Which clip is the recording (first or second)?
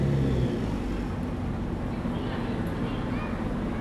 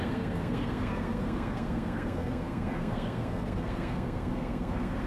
first